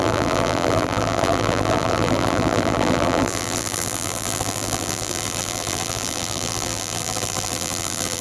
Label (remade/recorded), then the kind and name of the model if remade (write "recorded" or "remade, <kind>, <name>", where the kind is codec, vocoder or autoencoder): remade, vocoder, BigVGAN v2